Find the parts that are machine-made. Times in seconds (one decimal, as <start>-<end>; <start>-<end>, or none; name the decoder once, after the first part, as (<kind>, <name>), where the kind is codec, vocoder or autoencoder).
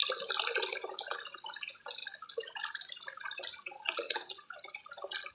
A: none